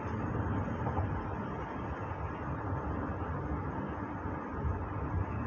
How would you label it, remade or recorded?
recorded